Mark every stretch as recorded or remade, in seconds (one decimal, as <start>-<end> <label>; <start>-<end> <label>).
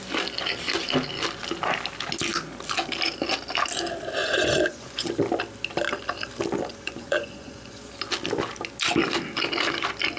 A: 0.0-4.2 recorded; 4.2-5.1 remade; 5.1-6.7 recorded; 6.7-7.9 remade; 7.9-10.2 recorded